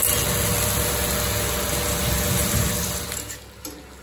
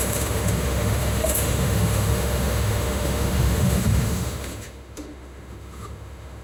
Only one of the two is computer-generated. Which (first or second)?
second